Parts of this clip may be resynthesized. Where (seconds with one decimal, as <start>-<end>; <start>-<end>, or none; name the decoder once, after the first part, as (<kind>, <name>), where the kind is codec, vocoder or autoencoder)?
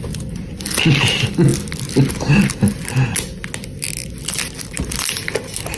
none